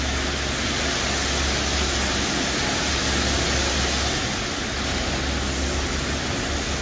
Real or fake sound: real